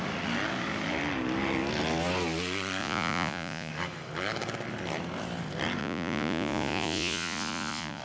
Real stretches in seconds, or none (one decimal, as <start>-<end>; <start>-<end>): 0.0-2.8; 3.7-5.8